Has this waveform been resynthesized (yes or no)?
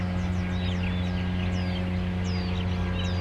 no